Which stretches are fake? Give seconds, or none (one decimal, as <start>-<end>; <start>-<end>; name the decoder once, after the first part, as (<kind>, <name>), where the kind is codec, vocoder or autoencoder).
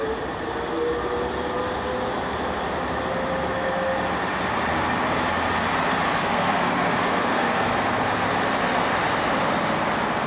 6.2-7.7 (codec, SNAC)